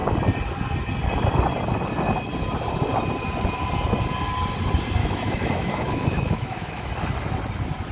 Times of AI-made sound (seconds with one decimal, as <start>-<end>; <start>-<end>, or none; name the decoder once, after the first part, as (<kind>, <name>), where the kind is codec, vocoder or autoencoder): 5.0-6.9 (autoencoder, DAC-VAE)